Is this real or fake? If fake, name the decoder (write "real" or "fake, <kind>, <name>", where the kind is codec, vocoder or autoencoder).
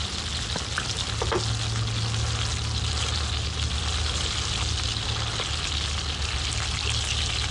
real